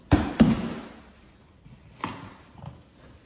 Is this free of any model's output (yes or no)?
yes